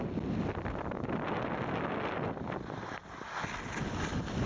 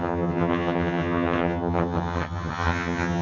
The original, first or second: first